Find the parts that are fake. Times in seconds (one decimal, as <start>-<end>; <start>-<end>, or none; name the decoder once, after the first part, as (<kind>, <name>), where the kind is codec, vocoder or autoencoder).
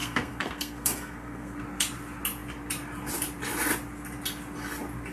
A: 0.0-1.6 (codec, SNAC)